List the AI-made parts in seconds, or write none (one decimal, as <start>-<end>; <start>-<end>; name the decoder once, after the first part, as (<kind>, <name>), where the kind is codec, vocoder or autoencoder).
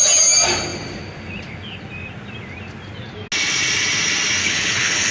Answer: 4.4-5.1 (codec, HILCodec)